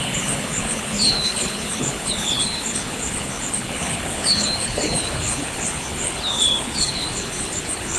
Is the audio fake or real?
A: fake